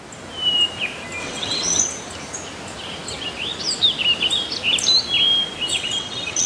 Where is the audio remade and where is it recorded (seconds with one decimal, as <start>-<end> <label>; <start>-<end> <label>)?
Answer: 0.0-1.2 recorded; 1.2-1.8 remade; 1.8-5.7 recorded; 5.7-6.5 remade